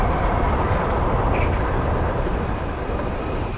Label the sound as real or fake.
real